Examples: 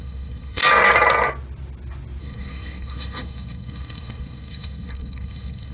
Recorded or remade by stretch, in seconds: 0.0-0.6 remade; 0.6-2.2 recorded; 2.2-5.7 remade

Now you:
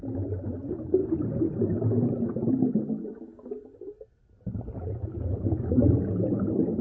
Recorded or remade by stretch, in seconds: 0.0-1.0 recorded; 1.0-2.5 remade; 2.5-4.8 recorded; 4.8-5.6 remade; 5.6-6.8 recorded

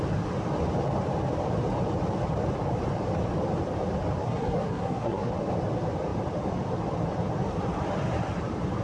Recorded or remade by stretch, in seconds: 0.0-4.2 recorded; 4.2-5.3 remade; 5.3-8.8 recorded

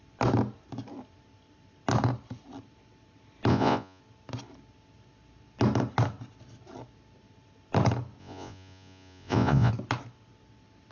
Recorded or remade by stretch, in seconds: 0.0-3.5 recorded; 3.5-4.0 remade; 4.0-8.2 recorded; 8.2-9.7 remade; 9.7-10.9 recorded